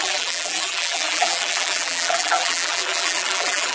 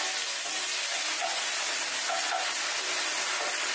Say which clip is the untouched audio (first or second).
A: second